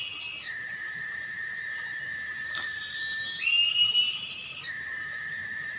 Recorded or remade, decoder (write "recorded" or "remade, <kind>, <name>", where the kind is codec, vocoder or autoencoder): recorded